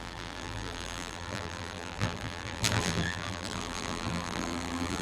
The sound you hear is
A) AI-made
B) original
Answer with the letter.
A